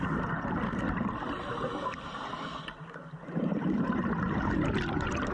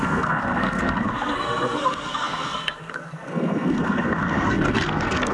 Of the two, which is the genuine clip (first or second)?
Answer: first